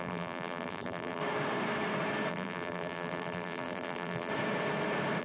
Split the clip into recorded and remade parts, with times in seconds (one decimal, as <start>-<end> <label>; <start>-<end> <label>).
0.0-1.2 remade; 1.2-2.3 recorded; 2.3-4.3 remade; 4.3-5.2 recorded